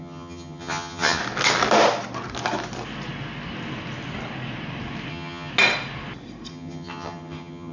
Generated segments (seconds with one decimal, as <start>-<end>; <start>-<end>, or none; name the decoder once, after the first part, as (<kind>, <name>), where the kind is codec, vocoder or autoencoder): 0.0-1.2 (vocoder, HiFi-GAN); 5.1-5.5; 6.5-7.7